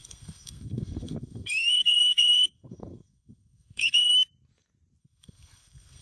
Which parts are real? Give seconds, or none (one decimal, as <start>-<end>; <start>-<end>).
4.1-5.0